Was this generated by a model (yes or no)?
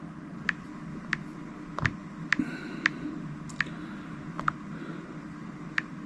no